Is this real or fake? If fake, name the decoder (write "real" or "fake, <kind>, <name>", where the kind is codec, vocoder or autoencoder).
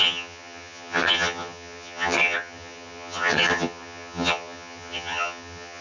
fake, vocoder, HiFi-GAN